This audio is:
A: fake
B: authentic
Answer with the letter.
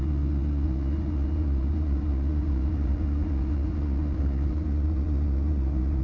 A